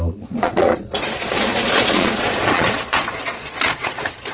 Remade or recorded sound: remade